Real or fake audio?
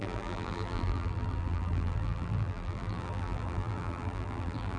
fake